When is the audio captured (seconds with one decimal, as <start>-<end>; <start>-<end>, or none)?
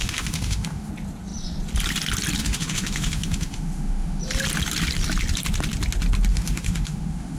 0.9-2.4; 4.2-6.3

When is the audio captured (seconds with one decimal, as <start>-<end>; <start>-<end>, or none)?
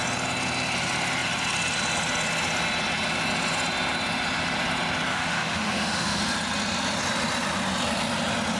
0.0-5.1; 6.2-8.6